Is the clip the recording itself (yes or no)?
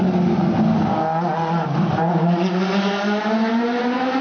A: yes